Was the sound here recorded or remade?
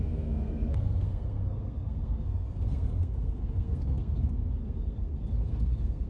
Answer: remade